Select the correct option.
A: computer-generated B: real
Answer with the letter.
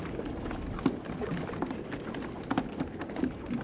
B